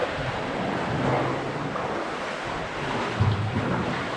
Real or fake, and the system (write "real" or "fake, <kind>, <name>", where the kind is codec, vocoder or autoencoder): real